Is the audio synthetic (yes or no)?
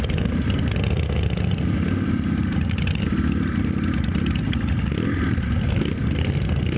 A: no